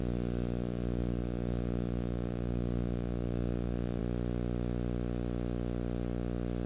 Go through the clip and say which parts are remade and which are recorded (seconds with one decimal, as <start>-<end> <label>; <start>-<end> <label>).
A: 0.0-4.0 remade; 4.0-6.7 recorded